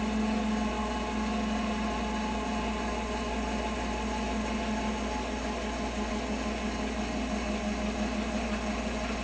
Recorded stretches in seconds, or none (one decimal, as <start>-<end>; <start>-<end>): 0.0-9.2